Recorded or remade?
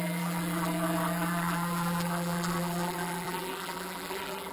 remade